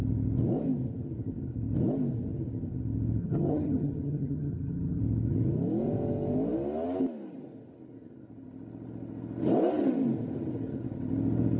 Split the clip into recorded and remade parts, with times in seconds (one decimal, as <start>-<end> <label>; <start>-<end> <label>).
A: 0.0-3.2 recorded; 3.2-5.0 remade; 5.0-11.6 recorded